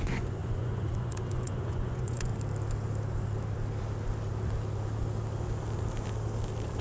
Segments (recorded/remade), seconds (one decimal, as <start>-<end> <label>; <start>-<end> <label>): 0.0-2.3 remade; 2.3-6.8 recorded